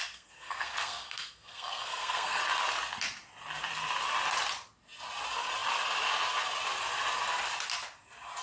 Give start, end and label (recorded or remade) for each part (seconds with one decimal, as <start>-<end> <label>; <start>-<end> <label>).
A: 0.0-2.4 remade; 2.4-8.4 recorded